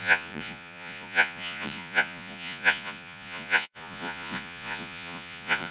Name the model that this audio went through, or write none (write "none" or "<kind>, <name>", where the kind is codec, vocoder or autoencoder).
vocoder, Vocos